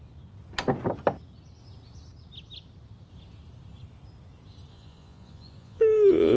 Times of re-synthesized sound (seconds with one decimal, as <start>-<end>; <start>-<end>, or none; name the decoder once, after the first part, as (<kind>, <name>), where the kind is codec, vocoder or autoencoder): 4.7-6.4 (vocoder, Vocos)